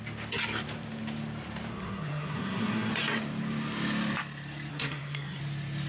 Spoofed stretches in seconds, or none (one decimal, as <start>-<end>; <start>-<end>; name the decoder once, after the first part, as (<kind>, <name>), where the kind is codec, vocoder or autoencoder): 1.7-2.9 (codec, SNAC); 4.7-5.4